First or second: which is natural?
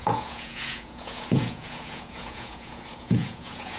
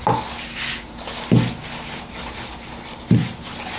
second